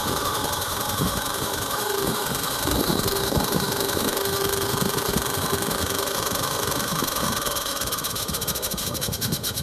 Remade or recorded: remade